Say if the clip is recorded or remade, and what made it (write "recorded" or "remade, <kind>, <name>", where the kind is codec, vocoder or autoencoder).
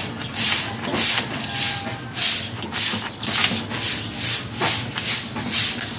recorded